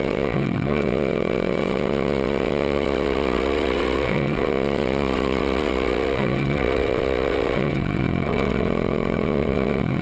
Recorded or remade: remade